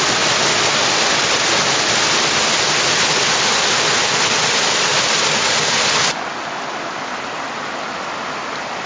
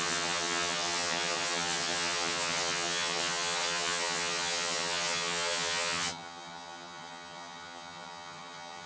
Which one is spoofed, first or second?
second